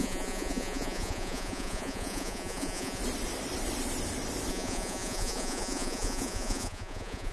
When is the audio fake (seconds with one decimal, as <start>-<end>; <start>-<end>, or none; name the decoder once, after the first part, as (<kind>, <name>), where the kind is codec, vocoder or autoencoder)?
0.0-3.0 (vocoder, Vocos); 4.5-7.3